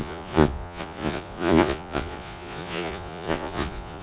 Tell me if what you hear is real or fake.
fake